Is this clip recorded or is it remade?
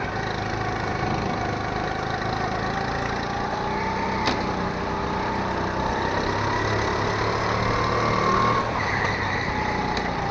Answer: recorded